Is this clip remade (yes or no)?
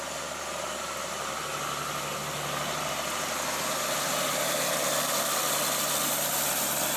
no